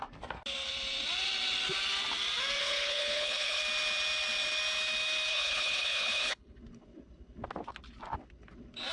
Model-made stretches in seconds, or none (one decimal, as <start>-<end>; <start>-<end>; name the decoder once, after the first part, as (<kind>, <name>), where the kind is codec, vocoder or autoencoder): 2.6-3.6 (codec, HILCodec); 5.3-6.6